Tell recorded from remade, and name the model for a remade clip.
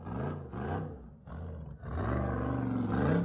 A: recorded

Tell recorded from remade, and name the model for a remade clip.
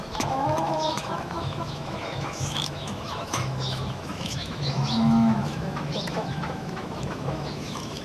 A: remade, autoencoder, DAC-VAE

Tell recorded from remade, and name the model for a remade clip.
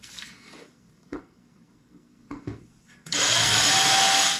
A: remade, codec, SNAC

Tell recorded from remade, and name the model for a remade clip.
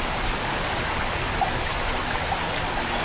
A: recorded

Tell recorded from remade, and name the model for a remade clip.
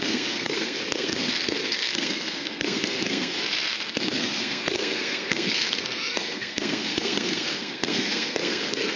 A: remade, codec, SNAC